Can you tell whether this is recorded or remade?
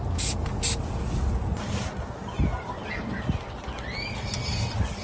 recorded